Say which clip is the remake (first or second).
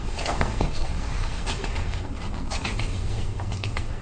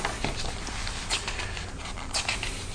first